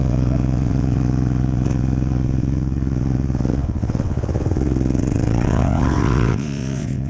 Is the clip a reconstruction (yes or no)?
yes